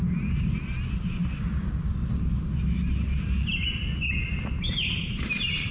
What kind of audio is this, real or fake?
real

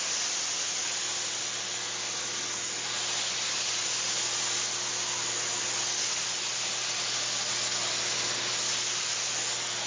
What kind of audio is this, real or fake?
real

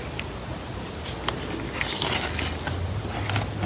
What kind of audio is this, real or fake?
real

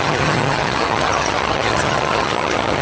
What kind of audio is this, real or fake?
fake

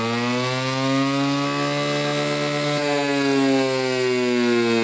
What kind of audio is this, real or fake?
real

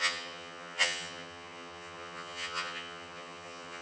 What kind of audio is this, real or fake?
fake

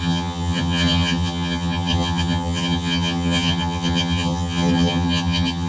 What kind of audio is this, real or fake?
fake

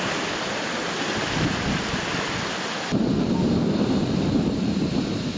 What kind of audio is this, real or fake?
real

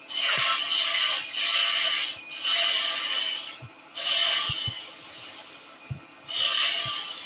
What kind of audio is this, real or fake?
real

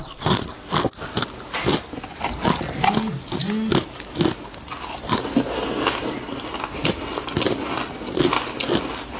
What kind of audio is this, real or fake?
real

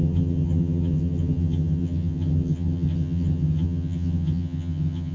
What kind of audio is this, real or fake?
fake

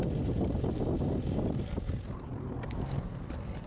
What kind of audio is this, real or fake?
real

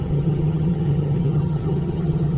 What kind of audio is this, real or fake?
fake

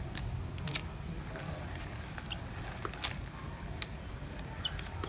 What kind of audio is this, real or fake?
real